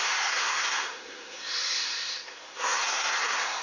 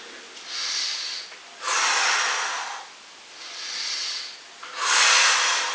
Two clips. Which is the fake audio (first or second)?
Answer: first